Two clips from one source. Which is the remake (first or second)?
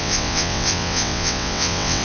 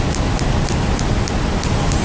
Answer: first